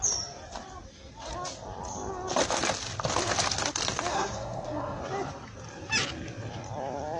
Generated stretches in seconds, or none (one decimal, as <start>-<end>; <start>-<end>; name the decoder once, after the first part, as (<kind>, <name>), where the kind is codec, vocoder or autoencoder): 4.1-5.0 (codec, SNAC)